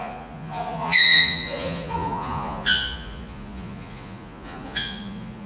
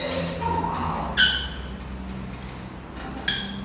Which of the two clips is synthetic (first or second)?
first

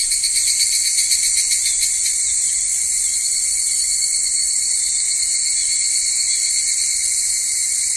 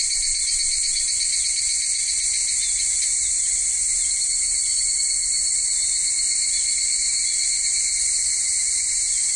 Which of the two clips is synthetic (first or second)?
first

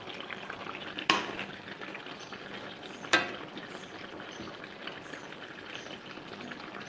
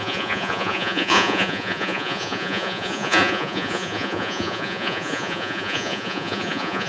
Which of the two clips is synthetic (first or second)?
second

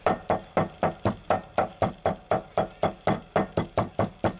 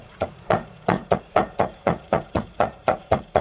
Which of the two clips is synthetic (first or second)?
second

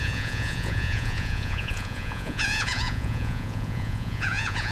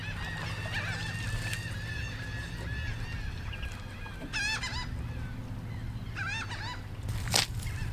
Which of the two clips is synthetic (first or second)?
first